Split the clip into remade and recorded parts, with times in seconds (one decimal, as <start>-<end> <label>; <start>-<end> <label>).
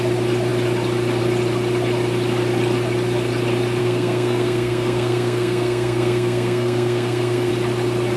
0.0-3.8 recorded; 3.8-7.5 remade; 7.5-8.2 recorded